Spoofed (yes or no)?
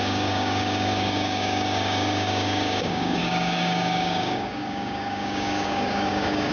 yes